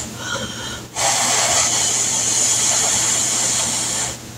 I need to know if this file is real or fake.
real